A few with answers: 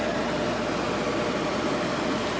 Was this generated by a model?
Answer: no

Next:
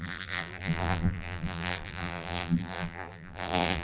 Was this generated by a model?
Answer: yes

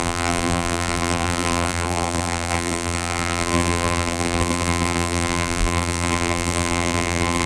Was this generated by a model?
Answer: yes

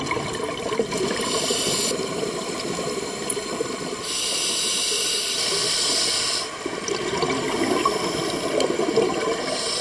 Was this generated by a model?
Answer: yes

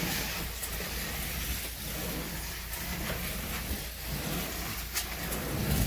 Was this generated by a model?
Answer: no